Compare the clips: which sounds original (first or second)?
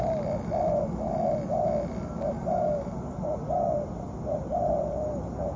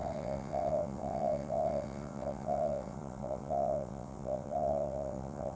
first